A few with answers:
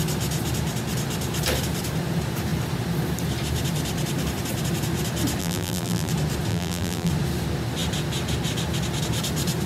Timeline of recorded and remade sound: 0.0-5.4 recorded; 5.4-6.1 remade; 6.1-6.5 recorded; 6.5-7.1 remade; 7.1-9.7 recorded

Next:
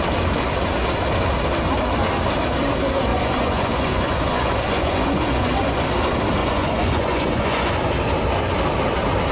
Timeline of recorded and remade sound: 0.0-3.1 recorded; 3.1-5.8 remade; 5.8-6.4 recorded; 6.4-7.7 remade; 7.7-9.3 recorded